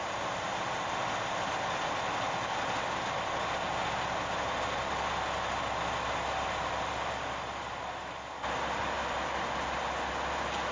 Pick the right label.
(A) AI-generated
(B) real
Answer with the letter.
B